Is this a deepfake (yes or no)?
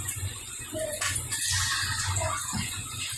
yes